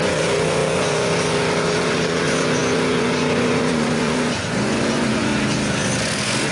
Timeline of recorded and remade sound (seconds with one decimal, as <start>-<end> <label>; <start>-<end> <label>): 0.0-5.3 remade; 5.3-6.0 recorded; 6.0-6.5 remade